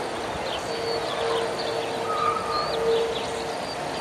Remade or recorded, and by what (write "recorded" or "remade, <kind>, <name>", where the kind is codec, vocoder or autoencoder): recorded